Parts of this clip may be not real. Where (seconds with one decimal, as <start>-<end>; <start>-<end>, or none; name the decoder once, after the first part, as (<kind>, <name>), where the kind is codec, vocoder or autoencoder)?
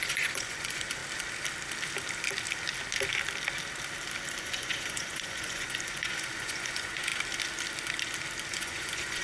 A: 0.0-1.0 (vocoder, Vocos); 4.4-7.1; 8.5-9.2